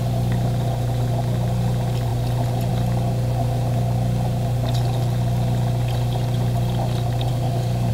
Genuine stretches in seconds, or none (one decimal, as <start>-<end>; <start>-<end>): 0.0-7.3